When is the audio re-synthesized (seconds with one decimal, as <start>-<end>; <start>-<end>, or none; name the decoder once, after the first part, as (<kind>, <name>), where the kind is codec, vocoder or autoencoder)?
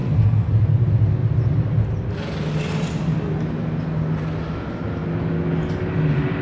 0.0-0.5 (codec, SNAC)